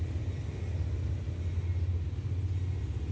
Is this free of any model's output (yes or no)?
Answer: yes